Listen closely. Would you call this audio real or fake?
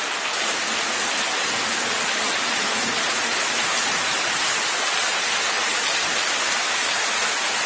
real